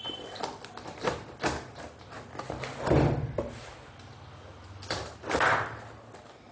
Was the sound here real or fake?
real